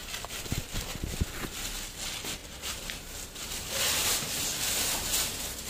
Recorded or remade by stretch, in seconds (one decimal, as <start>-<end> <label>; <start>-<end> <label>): 0.0-2.4 recorded; 2.4-4.1 remade; 4.1-5.7 recorded